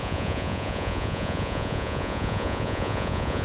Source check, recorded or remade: remade